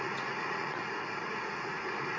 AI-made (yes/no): yes